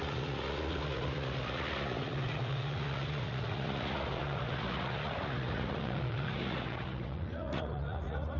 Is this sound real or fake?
fake